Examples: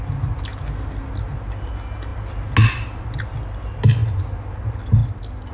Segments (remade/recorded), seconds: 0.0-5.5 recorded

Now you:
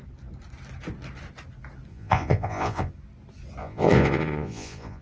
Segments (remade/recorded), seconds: 0.0-1.9 recorded; 1.9-2.9 remade; 2.9-3.6 recorded; 3.6-5.0 remade